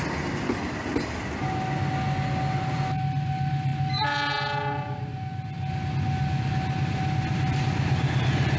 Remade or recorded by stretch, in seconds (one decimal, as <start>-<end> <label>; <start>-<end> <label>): 0.0-8.6 recorded